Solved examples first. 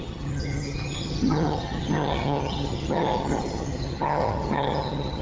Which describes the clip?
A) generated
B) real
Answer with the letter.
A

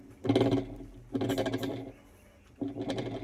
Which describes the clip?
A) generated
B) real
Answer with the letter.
B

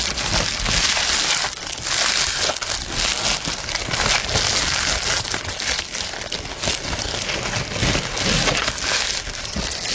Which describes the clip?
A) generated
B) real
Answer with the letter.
B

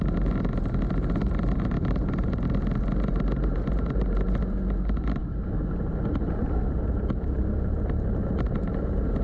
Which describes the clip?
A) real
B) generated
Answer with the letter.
B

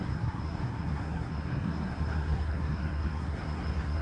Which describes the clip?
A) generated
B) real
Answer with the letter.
A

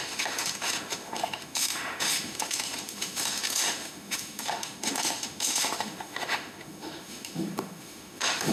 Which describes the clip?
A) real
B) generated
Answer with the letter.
B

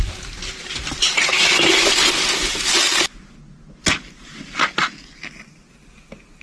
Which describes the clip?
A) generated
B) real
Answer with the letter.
B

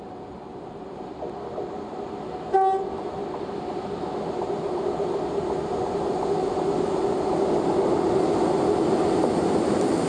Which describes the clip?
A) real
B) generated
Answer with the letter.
A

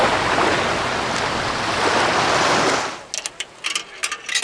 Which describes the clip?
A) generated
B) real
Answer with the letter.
B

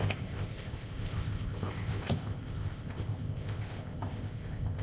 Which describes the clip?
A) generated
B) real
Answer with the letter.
A